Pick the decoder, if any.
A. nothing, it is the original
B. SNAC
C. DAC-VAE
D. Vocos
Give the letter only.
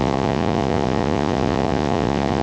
D